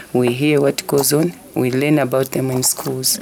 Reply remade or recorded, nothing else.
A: recorded